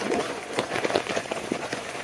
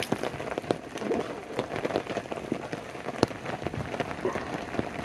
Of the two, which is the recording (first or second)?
second